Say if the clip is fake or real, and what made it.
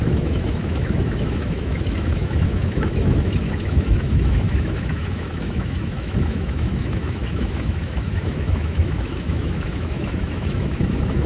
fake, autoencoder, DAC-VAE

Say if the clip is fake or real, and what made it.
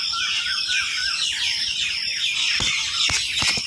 real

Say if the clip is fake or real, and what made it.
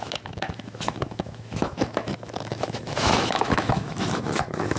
fake, autoencoder, DAC-VAE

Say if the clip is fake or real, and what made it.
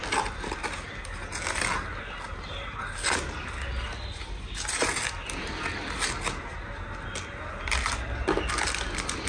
real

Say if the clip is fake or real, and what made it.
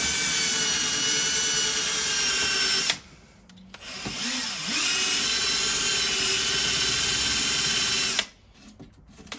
real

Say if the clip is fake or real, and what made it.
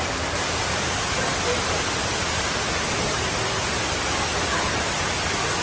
real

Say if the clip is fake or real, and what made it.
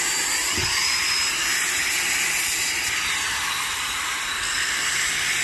real